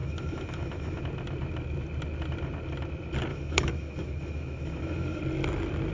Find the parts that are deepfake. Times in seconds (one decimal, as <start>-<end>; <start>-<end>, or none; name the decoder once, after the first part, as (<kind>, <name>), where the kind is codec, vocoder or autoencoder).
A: 0.0-1.0 (autoencoder, DAC-VAE); 3.3-5.2